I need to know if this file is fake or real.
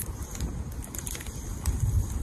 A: real